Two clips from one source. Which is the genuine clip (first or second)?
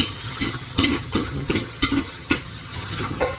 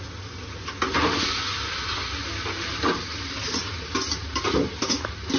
second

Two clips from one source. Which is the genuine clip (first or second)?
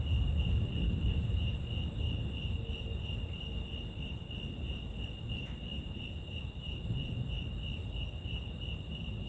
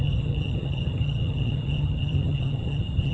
first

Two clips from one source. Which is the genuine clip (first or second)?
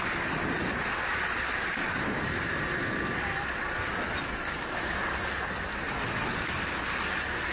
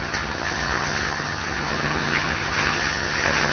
first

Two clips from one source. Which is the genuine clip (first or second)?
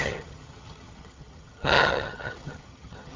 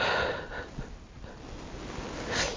second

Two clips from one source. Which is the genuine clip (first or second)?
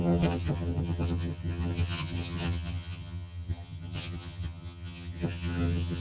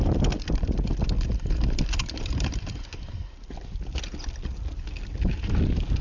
second